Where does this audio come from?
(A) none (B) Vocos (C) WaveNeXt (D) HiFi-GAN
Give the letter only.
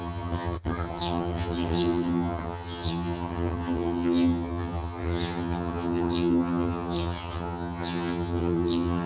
D